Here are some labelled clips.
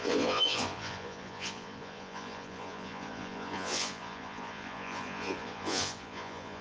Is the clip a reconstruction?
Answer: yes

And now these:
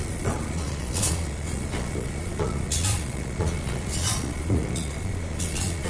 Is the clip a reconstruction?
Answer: yes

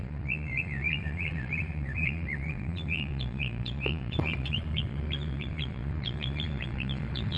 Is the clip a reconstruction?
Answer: yes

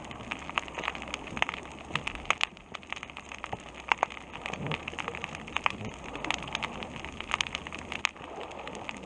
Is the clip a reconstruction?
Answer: no